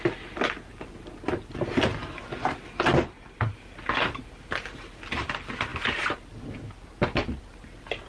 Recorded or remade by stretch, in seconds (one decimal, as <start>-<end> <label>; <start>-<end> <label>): 0.0-0.7 recorded; 0.7-1.2 remade; 1.2-8.1 recorded